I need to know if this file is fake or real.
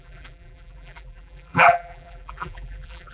fake